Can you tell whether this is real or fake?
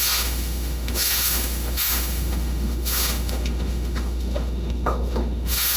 fake